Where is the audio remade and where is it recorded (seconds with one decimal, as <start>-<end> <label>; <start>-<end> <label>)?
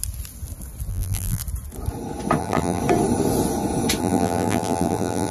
0.0-0.9 recorded; 0.9-1.4 remade; 1.4-2.4 recorded; 2.4-2.8 remade; 2.8-4.0 recorded; 4.0-5.3 remade